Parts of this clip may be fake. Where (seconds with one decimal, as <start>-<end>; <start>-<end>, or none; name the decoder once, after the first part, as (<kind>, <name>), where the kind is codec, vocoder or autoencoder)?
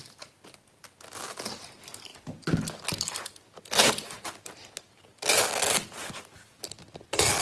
none